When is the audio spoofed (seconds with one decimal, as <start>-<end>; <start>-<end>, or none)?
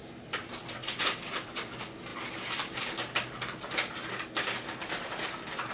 none